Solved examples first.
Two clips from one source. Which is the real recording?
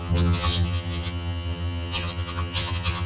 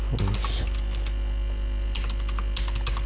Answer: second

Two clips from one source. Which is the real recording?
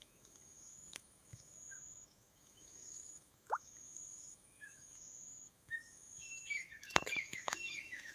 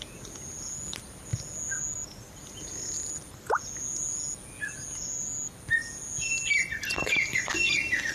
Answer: second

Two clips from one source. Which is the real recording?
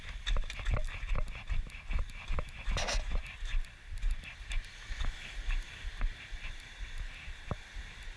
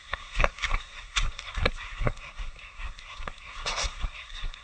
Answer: first